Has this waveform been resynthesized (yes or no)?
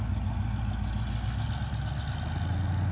no